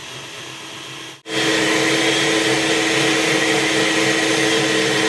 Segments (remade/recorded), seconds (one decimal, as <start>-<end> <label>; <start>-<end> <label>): 0.0-5.1 recorded